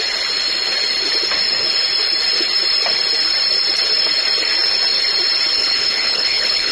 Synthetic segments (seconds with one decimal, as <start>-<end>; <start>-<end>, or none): 5.6-6.7